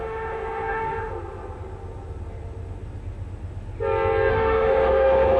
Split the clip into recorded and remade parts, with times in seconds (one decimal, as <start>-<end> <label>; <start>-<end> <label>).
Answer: 0.0-1.1 remade; 1.1-4.3 recorded; 4.3-5.4 remade